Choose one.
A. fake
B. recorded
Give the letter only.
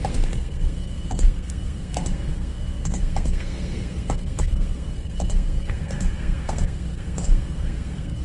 A